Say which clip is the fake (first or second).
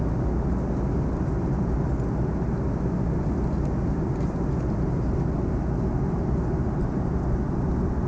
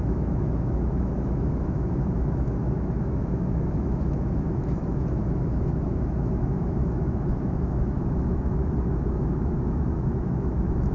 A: second